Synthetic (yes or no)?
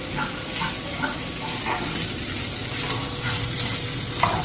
no